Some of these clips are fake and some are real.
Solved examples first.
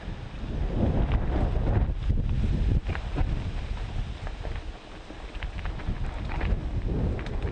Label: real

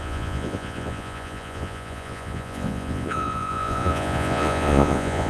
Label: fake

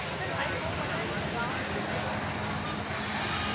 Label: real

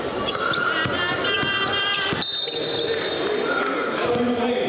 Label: real